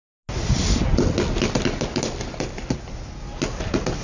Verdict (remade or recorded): recorded